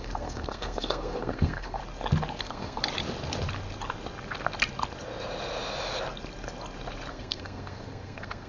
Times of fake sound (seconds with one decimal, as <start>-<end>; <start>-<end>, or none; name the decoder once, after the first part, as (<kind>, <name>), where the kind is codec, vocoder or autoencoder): 0.0-1.8 (codec, SNAC); 2.4-2.8; 7.1-8.5